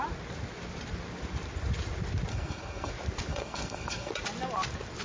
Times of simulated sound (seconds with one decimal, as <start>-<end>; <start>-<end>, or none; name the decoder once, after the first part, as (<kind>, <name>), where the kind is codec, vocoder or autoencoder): 2.3-2.9 (codec, SNAC); 3.3-4.1